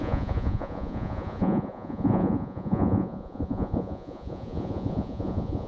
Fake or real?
fake